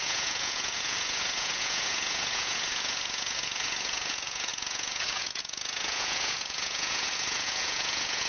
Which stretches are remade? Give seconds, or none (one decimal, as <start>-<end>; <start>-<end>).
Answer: 0.0-8.3

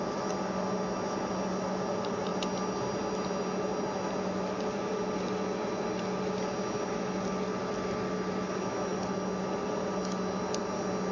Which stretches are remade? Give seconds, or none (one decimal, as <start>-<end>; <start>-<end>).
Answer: none

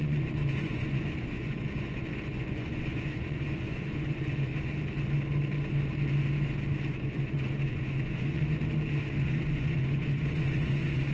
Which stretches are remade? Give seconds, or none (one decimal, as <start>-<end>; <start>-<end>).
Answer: 0.0-4.5; 6.9-8.4; 9.2-11.1

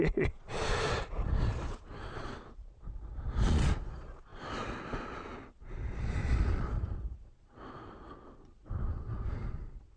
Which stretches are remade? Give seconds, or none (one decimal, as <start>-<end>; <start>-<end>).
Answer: 0.0-10.0

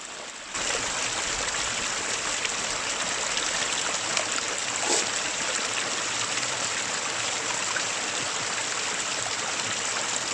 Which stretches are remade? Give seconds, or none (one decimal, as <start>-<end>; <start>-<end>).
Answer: 4.6-9.7